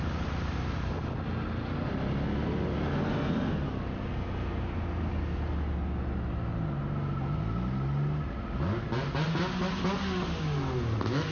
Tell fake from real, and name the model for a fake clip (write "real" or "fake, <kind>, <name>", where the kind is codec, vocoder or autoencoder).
real